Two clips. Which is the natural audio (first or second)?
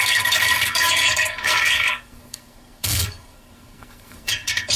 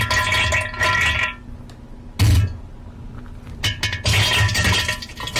second